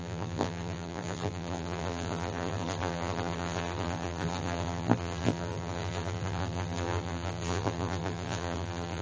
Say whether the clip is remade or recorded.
remade